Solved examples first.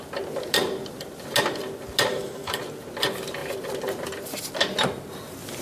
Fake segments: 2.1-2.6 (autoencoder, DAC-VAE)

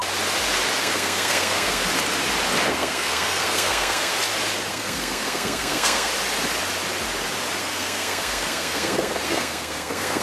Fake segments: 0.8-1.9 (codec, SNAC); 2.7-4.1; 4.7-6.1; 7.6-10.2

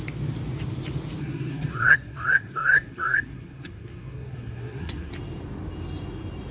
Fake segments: 1.2-5.1 (codec, SNAC)

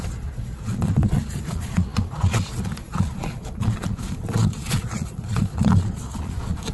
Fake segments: 0.0-6.7 (vocoder, Vocos)